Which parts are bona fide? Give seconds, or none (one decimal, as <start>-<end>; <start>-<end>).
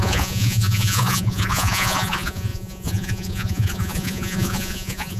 none